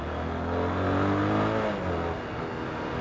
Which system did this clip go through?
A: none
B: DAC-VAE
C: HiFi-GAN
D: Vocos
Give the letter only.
A